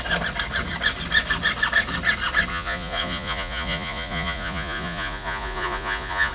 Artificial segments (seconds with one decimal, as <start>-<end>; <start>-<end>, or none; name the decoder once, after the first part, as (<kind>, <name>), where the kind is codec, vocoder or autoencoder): 2.5-6.3 (vocoder, Vocos)